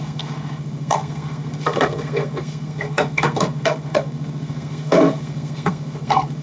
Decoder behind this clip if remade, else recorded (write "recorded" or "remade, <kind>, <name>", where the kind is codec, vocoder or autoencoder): remade, codec, SNAC